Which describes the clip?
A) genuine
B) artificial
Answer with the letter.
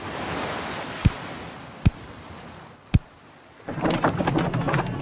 A